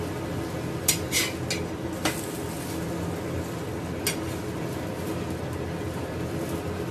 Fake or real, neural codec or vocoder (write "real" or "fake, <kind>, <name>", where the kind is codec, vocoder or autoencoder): real